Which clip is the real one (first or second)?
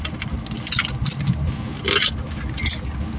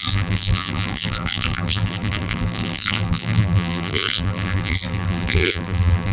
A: first